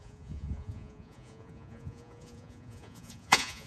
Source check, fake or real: fake